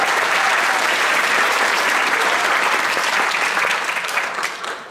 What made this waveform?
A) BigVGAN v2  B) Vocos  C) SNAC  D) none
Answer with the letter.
A